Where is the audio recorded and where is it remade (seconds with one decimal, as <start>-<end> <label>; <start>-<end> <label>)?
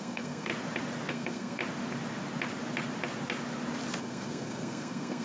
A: 0.0-0.5 remade; 0.5-1.1 recorded; 1.1-1.6 remade; 1.6-4.0 recorded; 4.0-5.2 remade